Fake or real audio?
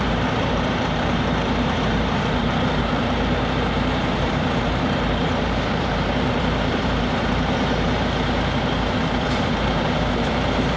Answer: fake